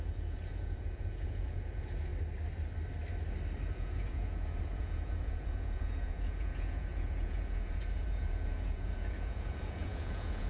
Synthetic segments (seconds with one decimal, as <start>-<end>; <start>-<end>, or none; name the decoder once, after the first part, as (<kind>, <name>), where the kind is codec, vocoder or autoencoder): 0.0-2.1 (vocoder, Vocos); 3.7-10.5